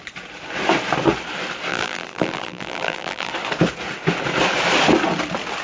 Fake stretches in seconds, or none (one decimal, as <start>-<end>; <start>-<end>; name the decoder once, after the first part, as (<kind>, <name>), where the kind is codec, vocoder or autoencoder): 1.7-3.3 (vocoder, BigVGAN v2)